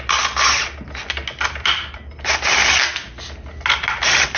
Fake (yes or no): no